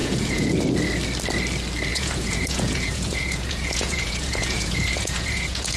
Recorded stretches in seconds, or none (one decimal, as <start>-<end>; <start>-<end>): 0.6-1.9